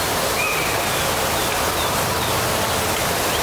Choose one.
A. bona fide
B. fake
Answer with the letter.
A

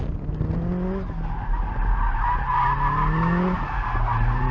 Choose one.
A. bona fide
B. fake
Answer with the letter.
A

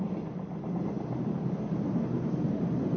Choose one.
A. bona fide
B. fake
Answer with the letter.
A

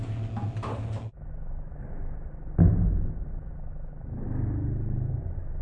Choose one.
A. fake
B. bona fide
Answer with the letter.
B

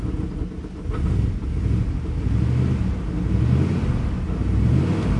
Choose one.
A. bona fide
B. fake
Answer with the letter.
A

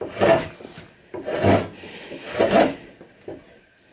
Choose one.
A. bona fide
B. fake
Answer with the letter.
A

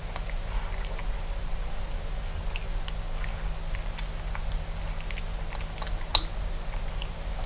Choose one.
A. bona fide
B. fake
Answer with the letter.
A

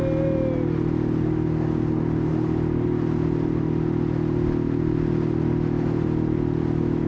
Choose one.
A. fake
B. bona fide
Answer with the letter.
B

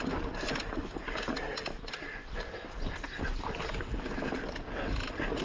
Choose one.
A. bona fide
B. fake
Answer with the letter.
A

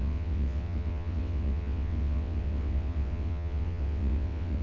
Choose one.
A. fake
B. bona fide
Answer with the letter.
A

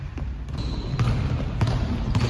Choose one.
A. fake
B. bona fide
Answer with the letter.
B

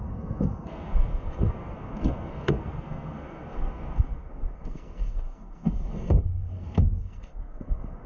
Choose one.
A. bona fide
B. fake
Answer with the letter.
B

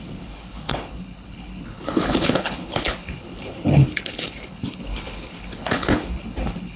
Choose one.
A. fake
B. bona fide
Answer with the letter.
A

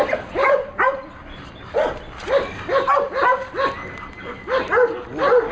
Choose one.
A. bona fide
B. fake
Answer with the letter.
A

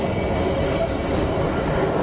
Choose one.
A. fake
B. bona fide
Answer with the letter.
B